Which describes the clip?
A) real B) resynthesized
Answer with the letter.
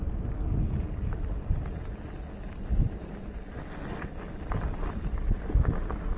A